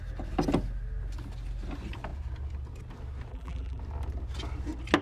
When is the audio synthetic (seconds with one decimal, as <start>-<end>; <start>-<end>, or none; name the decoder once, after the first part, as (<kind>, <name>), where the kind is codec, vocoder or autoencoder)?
3.3-3.8 (vocoder, BigVGAN v2)